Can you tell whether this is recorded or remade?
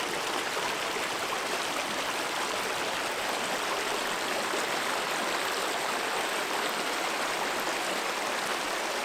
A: recorded